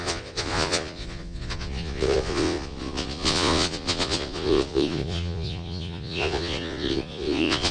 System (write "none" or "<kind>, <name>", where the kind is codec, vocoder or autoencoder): vocoder, Vocos